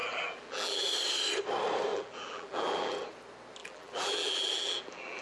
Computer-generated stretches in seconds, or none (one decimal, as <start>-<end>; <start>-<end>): 0.0-0.9; 1.9-3.1; 3.6-5.2